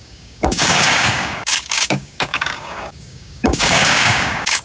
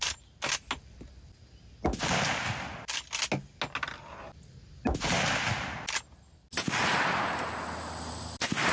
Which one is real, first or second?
second